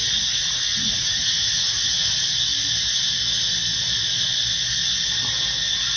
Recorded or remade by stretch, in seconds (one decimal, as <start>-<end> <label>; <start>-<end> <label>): 0.0-0.7 recorded; 0.7-2.1 remade; 2.1-6.0 recorded